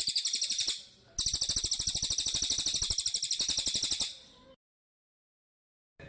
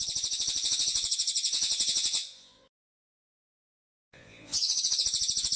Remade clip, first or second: second